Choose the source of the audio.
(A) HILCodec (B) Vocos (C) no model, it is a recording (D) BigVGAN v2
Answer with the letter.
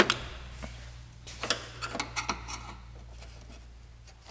C